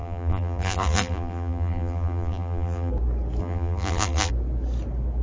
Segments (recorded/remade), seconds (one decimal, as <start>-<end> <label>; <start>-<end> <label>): 0.0-2.9 remade; 2.9-3.4 recorded; 3.4-4.3 remade; 4.3-5.2 recorded